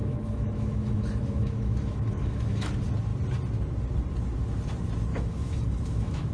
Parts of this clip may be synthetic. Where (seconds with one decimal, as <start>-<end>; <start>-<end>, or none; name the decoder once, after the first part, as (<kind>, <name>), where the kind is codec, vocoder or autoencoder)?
0.0-2.7 (autoencoder, DAC-VAE); 5.1-6.3